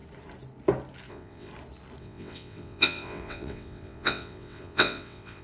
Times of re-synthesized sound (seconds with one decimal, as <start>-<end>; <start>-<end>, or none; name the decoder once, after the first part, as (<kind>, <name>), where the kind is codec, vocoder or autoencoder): 1.1-1.5 (vocoder, WaveNeXt); 2.0-5.4